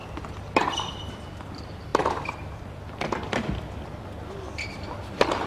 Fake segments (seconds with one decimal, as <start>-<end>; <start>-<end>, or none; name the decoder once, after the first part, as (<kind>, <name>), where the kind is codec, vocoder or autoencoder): 0.0-1.5 (vocoder, BigVGAN v2); 1.9-4.0